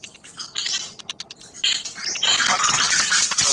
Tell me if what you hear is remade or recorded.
recorded